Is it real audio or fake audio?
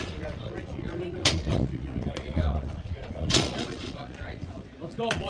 fake